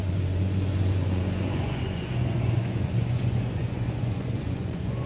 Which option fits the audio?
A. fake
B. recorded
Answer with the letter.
A